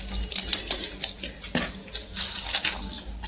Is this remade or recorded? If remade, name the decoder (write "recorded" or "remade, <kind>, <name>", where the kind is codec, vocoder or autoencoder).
recorded